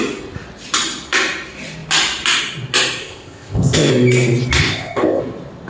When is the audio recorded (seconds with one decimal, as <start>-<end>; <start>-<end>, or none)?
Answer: 0.0-3.0; 3.9-4.6; 5.2-5.7